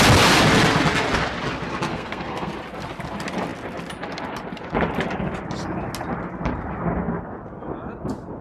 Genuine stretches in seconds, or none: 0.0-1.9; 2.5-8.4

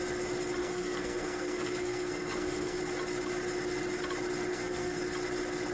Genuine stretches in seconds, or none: 0.0-0.6; 2.8-4.5; 5.0-5.7

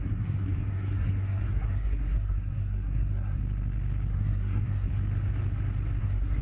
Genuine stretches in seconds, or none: 3.4-4.1; 4.9-6.0

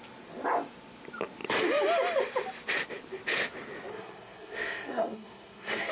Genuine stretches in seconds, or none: 0.0-3.9

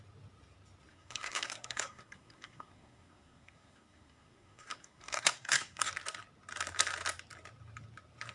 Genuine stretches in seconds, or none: 0.0-0.9; 5.9-8.3

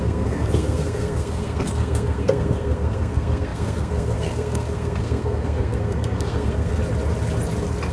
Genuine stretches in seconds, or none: 6.8-7.9